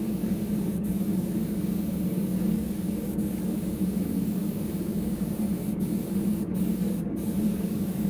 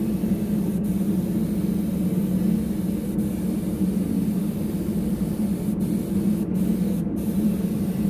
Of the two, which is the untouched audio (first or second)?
second